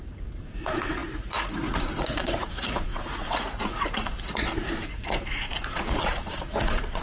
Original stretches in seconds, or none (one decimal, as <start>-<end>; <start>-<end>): none